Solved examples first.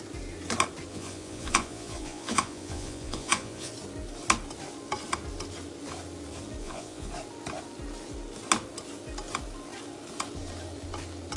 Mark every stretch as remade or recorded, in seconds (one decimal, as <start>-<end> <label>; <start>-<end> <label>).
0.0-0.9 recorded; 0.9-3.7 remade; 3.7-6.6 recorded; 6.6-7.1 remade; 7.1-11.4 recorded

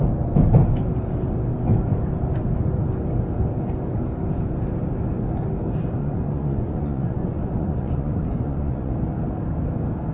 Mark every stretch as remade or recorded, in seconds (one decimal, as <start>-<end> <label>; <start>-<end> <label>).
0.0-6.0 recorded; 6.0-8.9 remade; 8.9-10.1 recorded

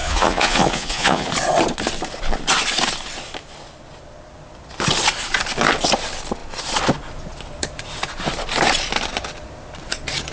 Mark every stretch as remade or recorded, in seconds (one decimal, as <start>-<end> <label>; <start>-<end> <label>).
0.0-1.3 remade; 1.3-10.3 recorded